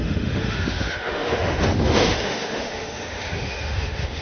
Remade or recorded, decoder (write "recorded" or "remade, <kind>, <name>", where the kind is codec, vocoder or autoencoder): remade, autoencoder, DAC-VAE